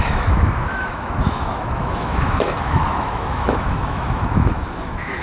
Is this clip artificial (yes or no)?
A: yes